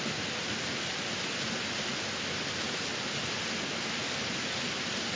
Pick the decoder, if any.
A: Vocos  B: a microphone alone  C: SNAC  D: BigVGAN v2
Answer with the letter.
B